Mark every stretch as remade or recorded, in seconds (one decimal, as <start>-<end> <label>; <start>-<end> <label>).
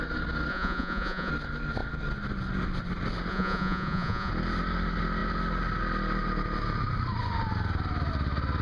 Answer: 0.0-0.5 recorded; 0.5-1.3 remade; 1.3-3.3 recorded; 3.3-4.3 remade; 4.3-8.6 recorded